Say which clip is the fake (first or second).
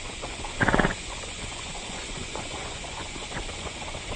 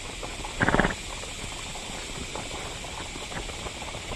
first